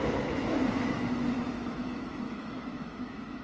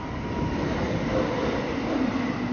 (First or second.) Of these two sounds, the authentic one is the second